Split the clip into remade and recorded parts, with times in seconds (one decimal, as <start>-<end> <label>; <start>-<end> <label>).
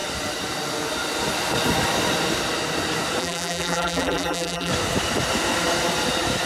0.0-3.2 recorded; 3.2-4.7 remade; 4.7-6.5 recorded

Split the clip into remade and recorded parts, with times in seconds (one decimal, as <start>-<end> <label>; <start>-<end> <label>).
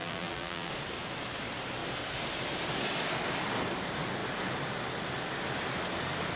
0.0-0.7 remade; 0.7-6.4 recorded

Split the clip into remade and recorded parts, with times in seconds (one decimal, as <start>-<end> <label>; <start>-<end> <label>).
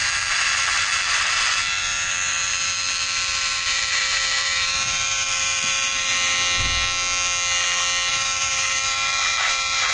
0.0-6.1 remade; 6.1-8.1 recorded; 8.1-9.9 remade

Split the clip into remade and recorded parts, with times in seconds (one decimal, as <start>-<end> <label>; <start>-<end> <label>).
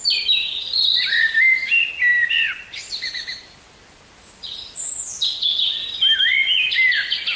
0.0-2.1 remade; 2.1-2.9 recorded; 2.9-4.9 remade; 4.9-5.8 recorded; 5.8-7.4 remade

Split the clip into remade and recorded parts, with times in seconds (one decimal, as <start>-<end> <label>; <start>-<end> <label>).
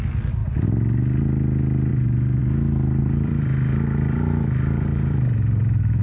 0.0-1.9 recorded; 1.9-2.4 remade; 2.4-3.0 recorded; 3.0-6.0 remade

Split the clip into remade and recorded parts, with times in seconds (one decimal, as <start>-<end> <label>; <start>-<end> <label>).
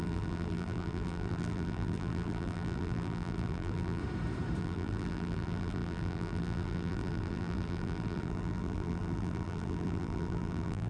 0.0-4.0 remade; 4.0-4.6 recorded; 4.6-10.9 remade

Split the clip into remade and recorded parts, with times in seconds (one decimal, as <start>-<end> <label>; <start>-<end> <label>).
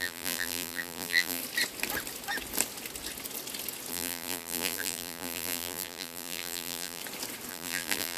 0.0-1.4 remade; 1.4-3.9 recorded; 3.9-7.0 remade; 7.0-7.5 recorded; 7.5-8.2 remade